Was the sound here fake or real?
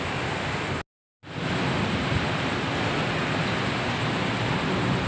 real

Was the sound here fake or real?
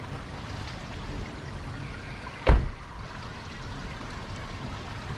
real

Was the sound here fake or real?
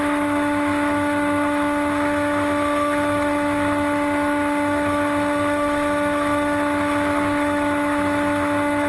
fake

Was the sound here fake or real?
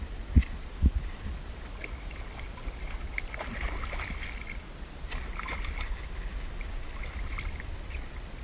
real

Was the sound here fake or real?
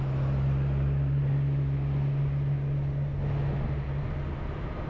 real